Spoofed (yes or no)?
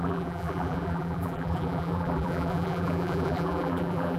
yes